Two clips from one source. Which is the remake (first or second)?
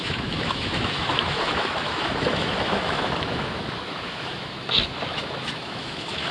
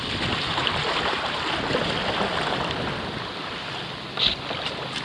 first